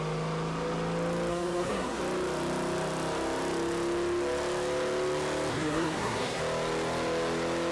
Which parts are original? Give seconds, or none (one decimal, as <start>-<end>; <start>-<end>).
0.0-1.3; 2.0-5.5; 6.4-7.7